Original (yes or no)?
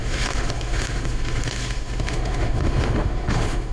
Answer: no